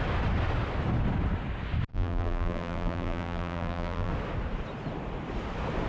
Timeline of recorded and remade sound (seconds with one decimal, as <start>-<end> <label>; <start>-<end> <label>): 0.0-1.9 recorded; 1.9-4.1 remade; 4.1-5.9 recorded